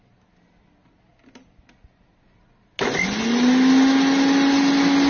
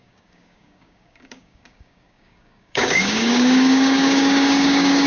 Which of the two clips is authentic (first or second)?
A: first